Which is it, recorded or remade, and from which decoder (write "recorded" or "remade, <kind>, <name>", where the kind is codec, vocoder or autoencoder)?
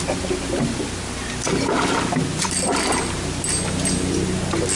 recorded